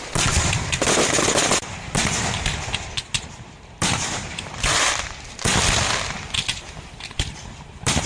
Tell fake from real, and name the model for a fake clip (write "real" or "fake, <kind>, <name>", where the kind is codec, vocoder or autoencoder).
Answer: fake, vocoder, BigVGAN v2